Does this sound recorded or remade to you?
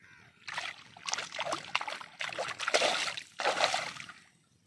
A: recorded